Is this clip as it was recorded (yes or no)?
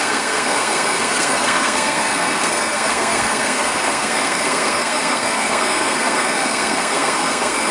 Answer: no